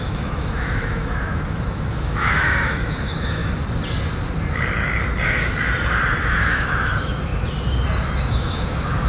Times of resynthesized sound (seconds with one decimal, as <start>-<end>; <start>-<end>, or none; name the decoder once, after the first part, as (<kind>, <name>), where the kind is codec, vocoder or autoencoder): 0.0-3.4 (autoencoder, DAC-VAE); 6.2-7.3; 8.2-9.1

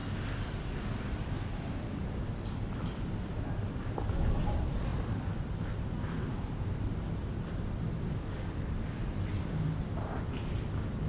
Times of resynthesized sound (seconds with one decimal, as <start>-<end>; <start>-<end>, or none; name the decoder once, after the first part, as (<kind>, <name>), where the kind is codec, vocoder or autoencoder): 1.3-11.1 (vocoder, BigVGAN v2)

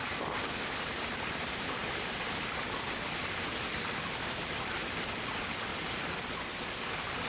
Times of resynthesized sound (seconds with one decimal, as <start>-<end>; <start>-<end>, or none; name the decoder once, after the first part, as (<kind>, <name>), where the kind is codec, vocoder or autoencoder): none

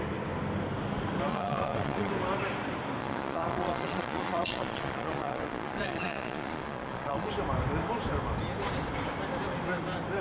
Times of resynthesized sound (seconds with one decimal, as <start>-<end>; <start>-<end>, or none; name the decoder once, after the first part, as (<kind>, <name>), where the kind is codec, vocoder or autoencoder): 1.3-2.1 (vocoder, Vocos); 3.0-7.3

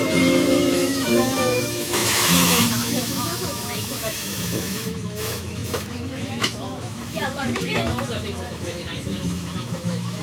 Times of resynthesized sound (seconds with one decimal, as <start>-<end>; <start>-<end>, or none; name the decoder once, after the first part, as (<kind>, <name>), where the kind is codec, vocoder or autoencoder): 0.0-10.2 (autoencoder, DAC-VAE)

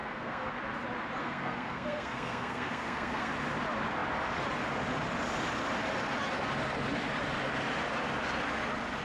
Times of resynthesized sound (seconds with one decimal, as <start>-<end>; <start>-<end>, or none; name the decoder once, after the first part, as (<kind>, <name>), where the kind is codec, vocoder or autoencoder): 0.0-0.5 (codec, SNAC); 1.2-3.3

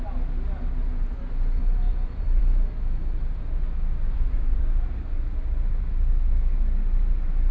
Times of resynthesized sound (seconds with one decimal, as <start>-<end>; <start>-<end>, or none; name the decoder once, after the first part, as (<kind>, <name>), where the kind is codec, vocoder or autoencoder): 1.6-2.4 (vocoder, BigVGAN v2)